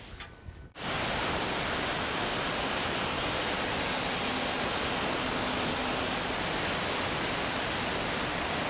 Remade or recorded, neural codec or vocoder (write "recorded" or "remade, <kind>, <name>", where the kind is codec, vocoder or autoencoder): recorded